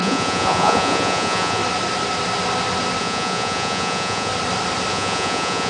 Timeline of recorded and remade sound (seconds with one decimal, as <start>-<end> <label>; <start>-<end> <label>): 0.0-1.6 remade; 1.6-3.0 recorded; 3.0-4.3 remade; 4.3-4.9 recorded; 4.9-5.7 remade